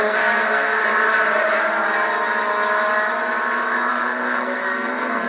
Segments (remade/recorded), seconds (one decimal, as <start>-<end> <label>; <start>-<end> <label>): 0.0-0.8 remade; 0.8-3.9 recorded; 3.9-5.3 remade

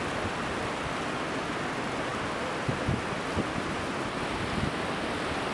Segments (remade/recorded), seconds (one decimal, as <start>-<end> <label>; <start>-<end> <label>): 0.0-5.5 recorded